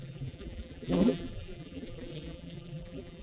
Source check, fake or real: fake